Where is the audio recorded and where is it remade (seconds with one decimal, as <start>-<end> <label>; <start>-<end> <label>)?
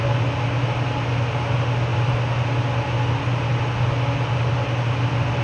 0.0-5.4 recorded